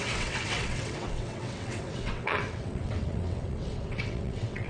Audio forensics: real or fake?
fake